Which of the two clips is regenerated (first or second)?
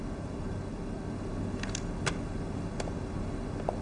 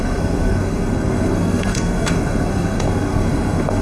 second